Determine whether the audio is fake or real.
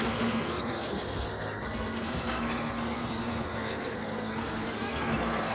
fake